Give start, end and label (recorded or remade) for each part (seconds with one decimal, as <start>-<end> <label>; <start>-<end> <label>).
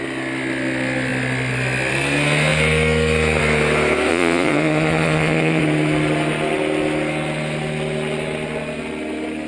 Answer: 0.0-4.1 recorded; 4.1-5.6 remade; 5.6-9.5 recorded